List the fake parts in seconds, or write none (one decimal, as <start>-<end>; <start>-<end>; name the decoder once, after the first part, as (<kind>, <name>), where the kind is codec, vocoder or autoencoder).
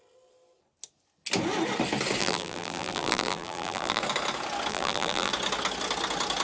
2.2-4.0 (vocoder, BigVGAN v2); 4.7-5.3